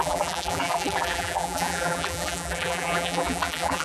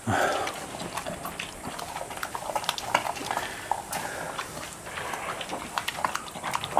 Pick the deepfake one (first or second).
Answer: first